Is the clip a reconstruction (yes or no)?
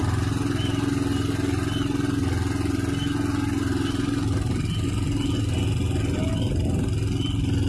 no